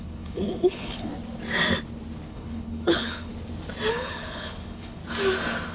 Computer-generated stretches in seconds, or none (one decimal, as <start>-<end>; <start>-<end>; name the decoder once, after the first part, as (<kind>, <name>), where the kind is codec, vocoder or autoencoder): 0.0-1.1 (codec, HILCodec); 2.3-3.3; 3.9-5.0